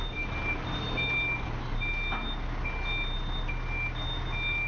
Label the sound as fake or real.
real